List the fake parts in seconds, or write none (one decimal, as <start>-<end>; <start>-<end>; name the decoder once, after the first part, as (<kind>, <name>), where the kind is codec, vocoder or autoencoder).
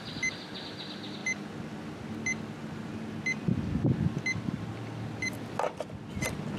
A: none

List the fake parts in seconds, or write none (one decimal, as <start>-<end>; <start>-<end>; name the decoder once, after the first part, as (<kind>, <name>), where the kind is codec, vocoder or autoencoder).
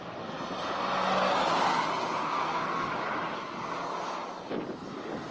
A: 2.2-2.9 (codec, SNAC)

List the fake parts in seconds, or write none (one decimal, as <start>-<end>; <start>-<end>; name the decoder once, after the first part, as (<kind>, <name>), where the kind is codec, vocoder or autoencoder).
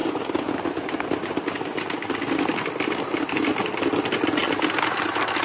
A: none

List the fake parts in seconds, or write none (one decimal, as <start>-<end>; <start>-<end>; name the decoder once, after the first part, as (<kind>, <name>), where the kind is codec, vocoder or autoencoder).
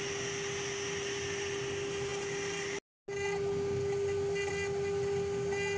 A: none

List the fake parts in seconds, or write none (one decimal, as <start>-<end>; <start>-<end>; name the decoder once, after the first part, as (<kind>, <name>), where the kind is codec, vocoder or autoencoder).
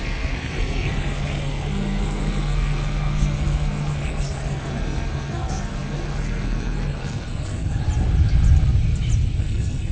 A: 0.0-7.8 (codec, SNAC); 9.4-9.9